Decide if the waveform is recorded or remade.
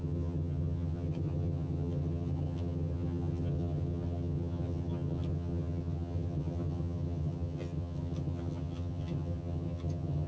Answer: remade